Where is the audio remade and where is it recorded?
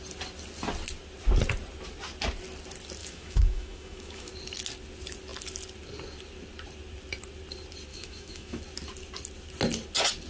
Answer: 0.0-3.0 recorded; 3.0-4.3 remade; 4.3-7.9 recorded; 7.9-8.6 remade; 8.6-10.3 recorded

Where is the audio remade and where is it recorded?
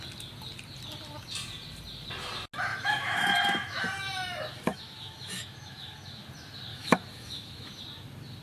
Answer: 0.0-2.7 recorded; 2.7-3.8 remade; 3.8-4.7 recorded; 4.7-6.2 remade; 6.2-6.7 recorded; 6.7-7.8 remade; 7.8-8.4 recorded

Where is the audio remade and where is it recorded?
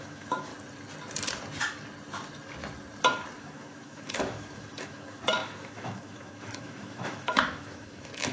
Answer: 0.0-0.5 remade; 0.5-3.4 recorded; 3.4-8.3 remade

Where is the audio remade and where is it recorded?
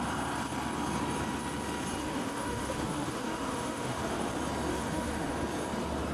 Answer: 0.0-2.0 recorded; 2.0-4.3 remade; 4.3-4.7 recorded; 4.7-5.3 remade; 5.3-6.1 recorded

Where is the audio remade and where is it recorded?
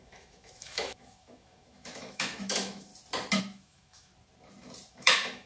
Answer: 0.0-2.9 remade; 2.9-3.4 recorded; 3.4-4.1 remade; 4.1-4.9 recorded; 4.9-5.5 remade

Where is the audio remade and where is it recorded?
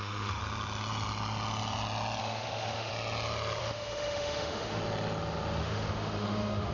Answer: 0.0-0.4 remade; 0.4-2.2 recorded; 2.2-2.9 remade; 2.9-3.6 recorded; 3.6-4.8 remade; 4.8-5.6 recorded; 5.6-6.7 remade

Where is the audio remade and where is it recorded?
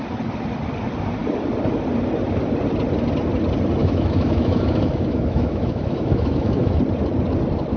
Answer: 0.0-3.8 recorded; 3.8-6.8 remade; 6.8-7.8 recorded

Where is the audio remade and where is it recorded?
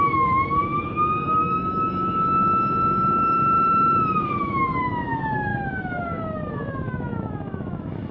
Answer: 0.0-8.1 remade